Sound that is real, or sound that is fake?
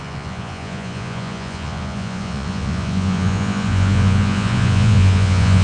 fake